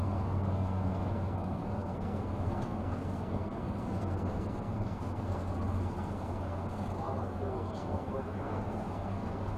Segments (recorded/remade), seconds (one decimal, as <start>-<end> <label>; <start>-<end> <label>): 0.0-9.6 remade